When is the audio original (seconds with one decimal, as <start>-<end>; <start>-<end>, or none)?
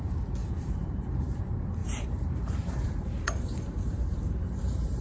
0.0-0.4; 1.4-1.8